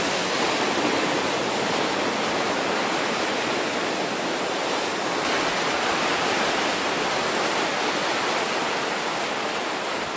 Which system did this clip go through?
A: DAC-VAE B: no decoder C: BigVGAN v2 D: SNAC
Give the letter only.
B